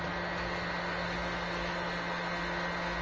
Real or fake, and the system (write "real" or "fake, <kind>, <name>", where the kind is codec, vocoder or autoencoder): real